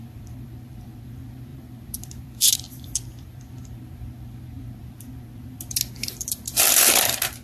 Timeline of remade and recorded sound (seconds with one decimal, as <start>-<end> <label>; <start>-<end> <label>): 0.0-7.4 remade